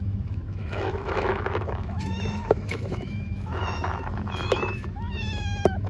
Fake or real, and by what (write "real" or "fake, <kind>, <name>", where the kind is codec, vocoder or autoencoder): fake, autoencoder, DAC-VAE